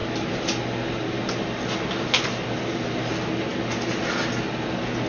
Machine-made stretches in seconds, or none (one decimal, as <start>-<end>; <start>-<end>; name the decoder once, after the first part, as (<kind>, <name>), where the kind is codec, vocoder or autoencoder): none